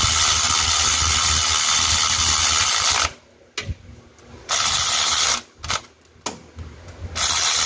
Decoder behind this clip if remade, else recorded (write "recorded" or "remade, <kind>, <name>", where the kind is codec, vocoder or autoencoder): recorded